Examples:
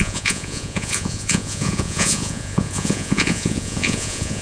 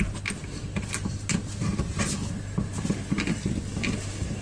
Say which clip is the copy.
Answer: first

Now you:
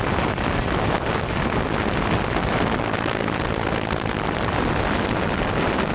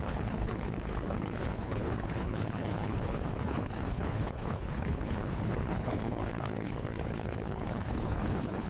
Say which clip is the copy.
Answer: second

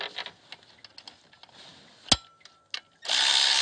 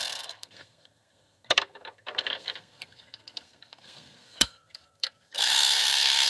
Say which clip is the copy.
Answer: second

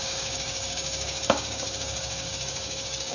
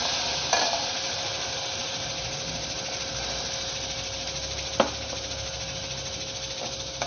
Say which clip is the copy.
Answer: first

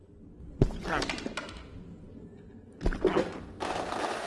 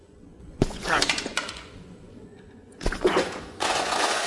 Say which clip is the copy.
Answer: second